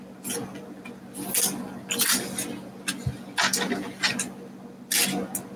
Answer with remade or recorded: recorded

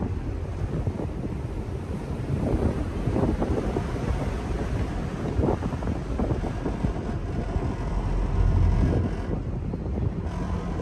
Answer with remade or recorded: recorded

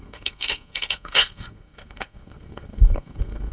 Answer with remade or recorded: remade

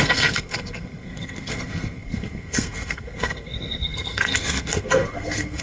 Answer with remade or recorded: remade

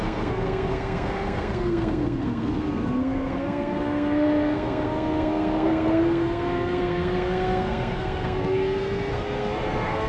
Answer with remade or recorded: remade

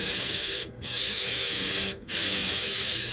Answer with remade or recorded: remade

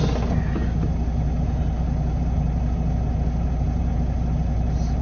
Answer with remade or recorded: recorded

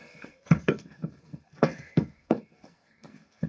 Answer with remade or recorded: remade